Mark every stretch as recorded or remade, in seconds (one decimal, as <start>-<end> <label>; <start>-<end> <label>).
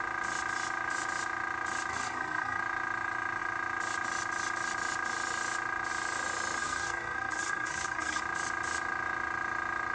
0.0-1.9 recorded; 1.9-2.6 remade; 2.6-6.6 recorded; 6.6-8.2 remade; 8.2-9.9 recorded